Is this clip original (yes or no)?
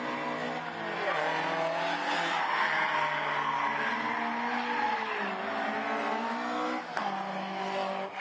yes